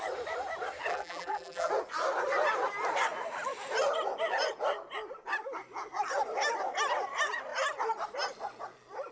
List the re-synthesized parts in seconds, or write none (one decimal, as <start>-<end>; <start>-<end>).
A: 0.9-1.7